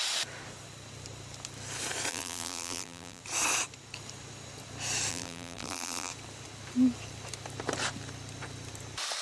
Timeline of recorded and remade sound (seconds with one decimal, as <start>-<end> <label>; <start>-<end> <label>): 0.0-2.1 recorded; 2.1-3.2 remade; 3.2-5.1 recorded; 5.1-6.1 remade; 6.1-9.2 recorded